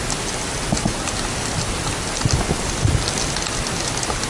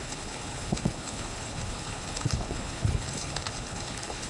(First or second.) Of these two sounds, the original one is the first